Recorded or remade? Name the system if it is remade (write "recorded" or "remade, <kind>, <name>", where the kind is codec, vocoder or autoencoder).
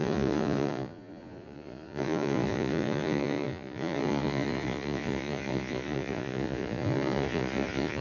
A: remade, vocoder, Vocos